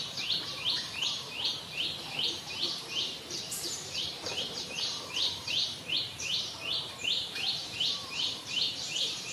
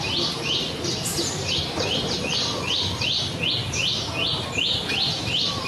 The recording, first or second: second